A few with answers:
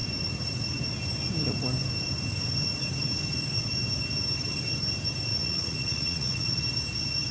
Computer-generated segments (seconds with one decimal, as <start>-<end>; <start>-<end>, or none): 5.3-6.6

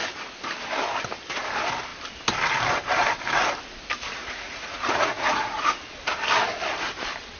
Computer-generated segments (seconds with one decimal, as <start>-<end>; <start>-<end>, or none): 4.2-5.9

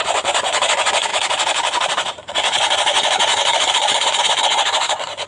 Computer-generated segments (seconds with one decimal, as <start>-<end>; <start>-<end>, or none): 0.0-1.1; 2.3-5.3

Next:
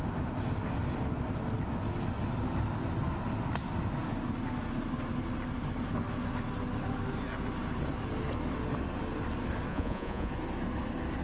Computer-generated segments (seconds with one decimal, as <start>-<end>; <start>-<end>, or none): 9.7-10.3